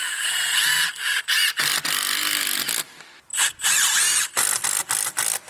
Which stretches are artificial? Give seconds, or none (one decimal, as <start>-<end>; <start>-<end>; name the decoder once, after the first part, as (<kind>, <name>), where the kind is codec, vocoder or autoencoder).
0.0-0.7 (vocoder, Vocos)